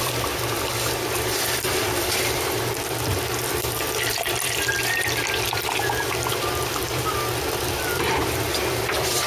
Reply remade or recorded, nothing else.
remade